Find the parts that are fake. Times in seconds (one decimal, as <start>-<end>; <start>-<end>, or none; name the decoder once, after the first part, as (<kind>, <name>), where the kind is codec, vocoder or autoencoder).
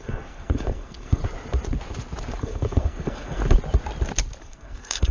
0.0-1.2 (codec, SNAC); 2.4-3.4; 4.4-5.1